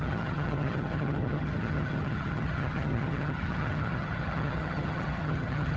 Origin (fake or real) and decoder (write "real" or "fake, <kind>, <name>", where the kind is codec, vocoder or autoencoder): fake, vocoder, HiFi-GAN